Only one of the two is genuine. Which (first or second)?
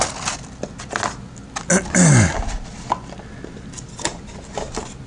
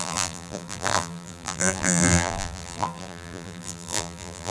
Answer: first